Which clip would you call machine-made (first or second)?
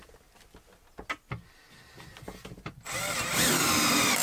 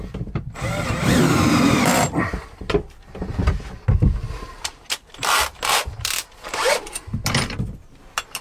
second